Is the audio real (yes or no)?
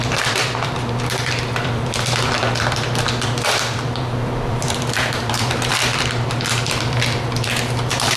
no